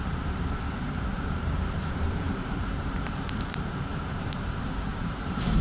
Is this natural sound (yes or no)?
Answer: no